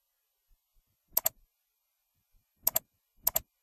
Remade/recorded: recorded